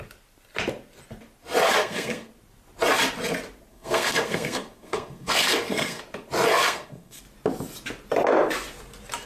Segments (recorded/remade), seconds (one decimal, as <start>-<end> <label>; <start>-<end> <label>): 0.0-1.8 recorded; 1.8-2.3 remade; 2.3-3.7 recorded; 3.7-6.0 remade; 6.0-6.5 recorded; 6.5-7.2 remade; 7.2-9.3 recorded